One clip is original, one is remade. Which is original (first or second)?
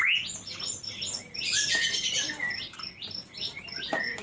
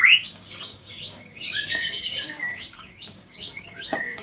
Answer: first